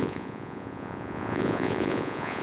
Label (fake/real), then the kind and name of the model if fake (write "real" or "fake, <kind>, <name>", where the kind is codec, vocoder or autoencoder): fake, vocoder, Vocos